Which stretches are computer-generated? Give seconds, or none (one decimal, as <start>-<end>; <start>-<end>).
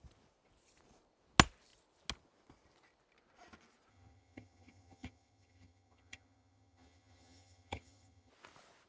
3.9-8.3